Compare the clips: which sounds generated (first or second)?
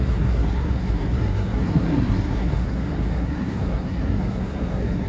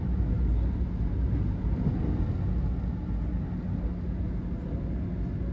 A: first